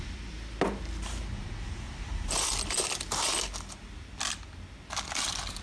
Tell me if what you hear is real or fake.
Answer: real